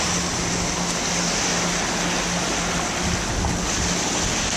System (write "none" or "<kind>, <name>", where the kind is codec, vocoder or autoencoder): none